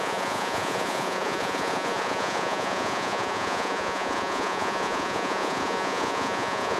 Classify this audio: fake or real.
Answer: fake